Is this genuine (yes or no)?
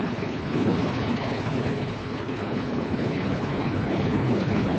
no